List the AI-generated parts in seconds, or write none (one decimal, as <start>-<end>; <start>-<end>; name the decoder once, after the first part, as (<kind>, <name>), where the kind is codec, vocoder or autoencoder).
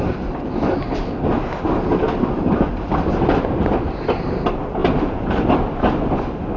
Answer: 4.8-5.5 (vocoder, BigVGAN v2)